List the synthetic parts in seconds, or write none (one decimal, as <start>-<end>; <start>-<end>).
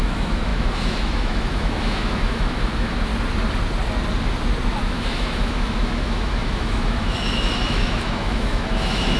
0.0-3.1; 4.8-9.2